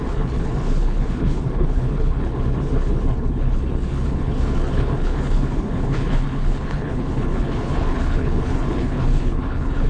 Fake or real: fake